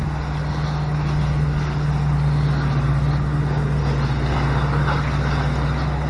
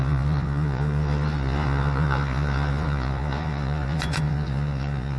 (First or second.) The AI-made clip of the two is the second